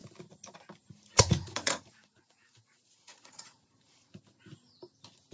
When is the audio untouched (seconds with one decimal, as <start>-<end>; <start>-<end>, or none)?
0.0-1.1; 4.2-5.3